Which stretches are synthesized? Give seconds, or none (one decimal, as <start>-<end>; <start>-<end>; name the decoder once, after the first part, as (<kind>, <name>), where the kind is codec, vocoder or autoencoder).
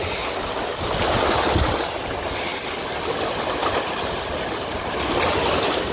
none